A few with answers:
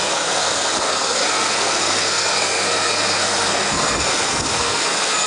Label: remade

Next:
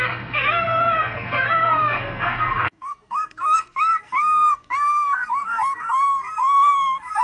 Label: remade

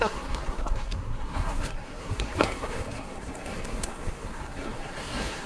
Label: remade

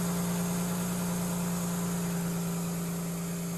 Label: recorded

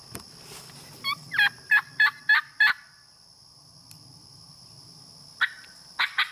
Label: recorded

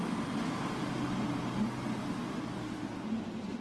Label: recorded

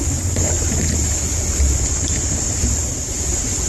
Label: recorded